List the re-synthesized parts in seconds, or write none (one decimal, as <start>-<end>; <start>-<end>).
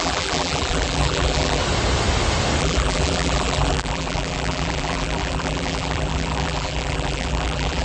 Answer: 0.0-1.6; 2.6-7.8